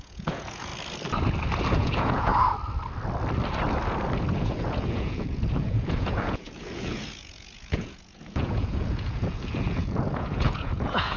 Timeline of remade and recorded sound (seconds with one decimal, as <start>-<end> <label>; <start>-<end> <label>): 0.0-0.7 remade; 0.7-1.7 recorded; 1.7-2.3 remade; 2.3-4.3 recorded; 4.3-11.2 remade